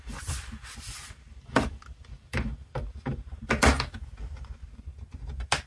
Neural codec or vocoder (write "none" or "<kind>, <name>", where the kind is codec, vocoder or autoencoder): none